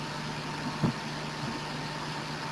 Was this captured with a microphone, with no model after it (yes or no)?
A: yes